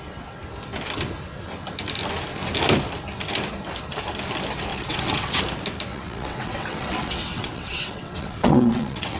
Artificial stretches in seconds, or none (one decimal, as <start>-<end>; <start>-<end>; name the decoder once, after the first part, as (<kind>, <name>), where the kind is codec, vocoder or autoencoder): 4.7-5.4 (vocoder, WaveNeXt); 5.9-9.2